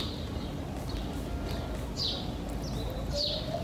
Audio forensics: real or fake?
real